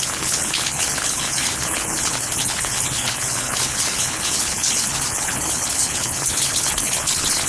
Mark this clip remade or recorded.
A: remade